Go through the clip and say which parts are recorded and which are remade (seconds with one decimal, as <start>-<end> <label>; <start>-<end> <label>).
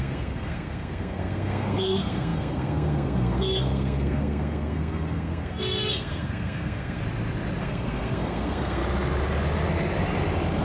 0.0-7.0 remade; 7.0-7.6 recorded; 7.6-8.8 remade; 8.8-10.6 recorded